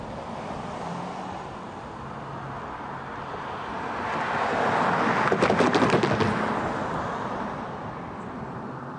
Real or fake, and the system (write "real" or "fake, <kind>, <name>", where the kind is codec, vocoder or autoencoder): real